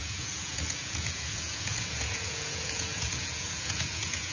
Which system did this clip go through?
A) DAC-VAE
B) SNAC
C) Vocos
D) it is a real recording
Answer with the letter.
C